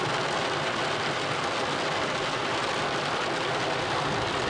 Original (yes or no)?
yes